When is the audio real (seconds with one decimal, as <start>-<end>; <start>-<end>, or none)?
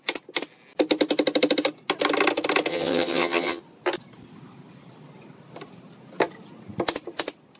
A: 0.0-2.7; 3.6-7.6